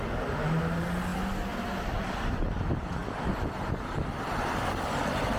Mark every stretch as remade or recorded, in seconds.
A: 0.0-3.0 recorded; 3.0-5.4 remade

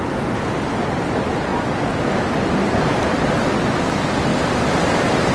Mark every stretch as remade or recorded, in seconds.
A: 0.0-4.3 recorded; 4.3-5.3 remade

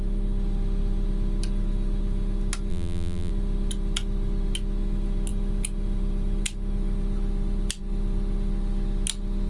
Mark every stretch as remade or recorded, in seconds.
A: 0.0-2.7 recorded; 2.7-3.3 remade; 3.3-9.5 recorded

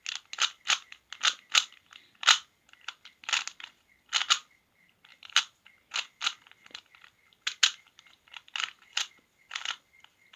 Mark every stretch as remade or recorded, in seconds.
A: 0.0-5.1 recorded; 5.1-5.6 remade; 5.6-10.4 recorded

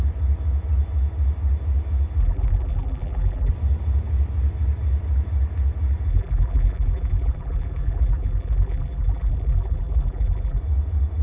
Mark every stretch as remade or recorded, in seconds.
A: 0.0-2.2 recorded; 2.2-3.5 remade; 3.5-6.1 recorded; 6.1-10.6 remade; 10.6-11.2 recorded

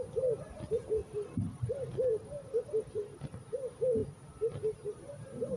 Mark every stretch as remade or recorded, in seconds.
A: 0.0-1.0 recorded; 1.0-3.4 remade; 3.4-5.6 recorded